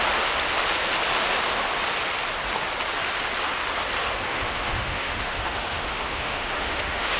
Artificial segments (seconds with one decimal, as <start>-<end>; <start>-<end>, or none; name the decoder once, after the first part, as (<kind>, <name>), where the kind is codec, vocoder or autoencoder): 4.3-7.2 (autoencoder, DAC-VAE)